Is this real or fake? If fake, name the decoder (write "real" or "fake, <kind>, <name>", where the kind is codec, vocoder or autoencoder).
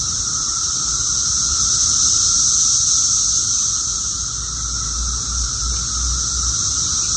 real